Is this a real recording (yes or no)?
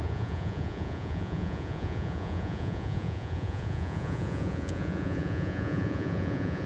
no